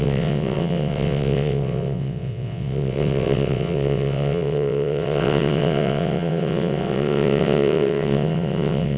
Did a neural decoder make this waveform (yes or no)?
yes